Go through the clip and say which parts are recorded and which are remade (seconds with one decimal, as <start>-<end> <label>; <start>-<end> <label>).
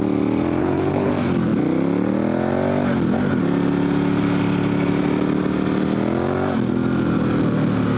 0.0-0.6 recorded; 0.6-1.1 remade; 1.1-8.0 recorded